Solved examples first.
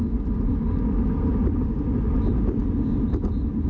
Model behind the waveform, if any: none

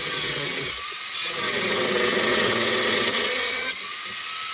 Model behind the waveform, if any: vocoder, WaveNeXt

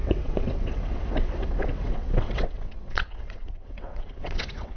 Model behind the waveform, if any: vocoder, WaveNeXt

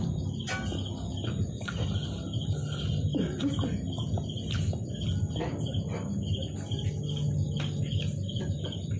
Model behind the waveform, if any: none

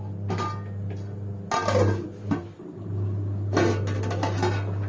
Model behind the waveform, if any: none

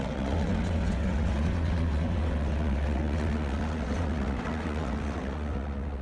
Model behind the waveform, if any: vocoder, WaveNeXt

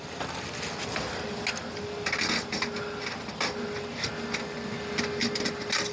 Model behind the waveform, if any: none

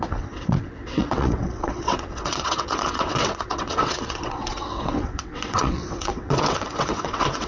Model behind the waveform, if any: vocoder, WaveNeXt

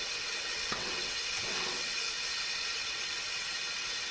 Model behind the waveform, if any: vocoder, WaveNeXt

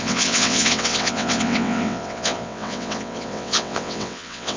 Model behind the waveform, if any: vocoder, WaveNeXt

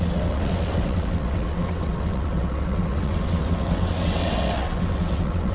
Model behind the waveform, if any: vocoder, WaveNeXt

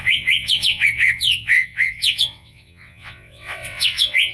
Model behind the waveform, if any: vocoder, WaveNeXt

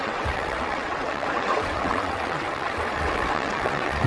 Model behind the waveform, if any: vocoder, WaveNeXt